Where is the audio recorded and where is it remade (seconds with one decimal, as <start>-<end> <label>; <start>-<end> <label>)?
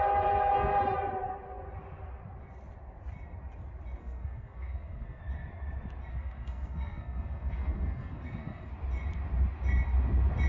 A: 0.0-4.0 recorded; 4.0-5.2 remade; 5.2-6.1 recorded; 6.1-8.7 remade; 8.7-10.5 recorded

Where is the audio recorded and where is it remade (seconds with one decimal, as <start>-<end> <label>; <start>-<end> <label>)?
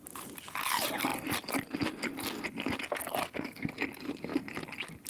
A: 0.0-3.2 recorded; 3.2-3.7 remade; 3.7-5.1 recorded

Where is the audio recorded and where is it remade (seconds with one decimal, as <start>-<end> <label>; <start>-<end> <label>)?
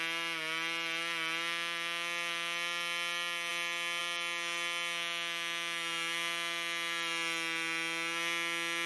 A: 0.0-8.9 recorded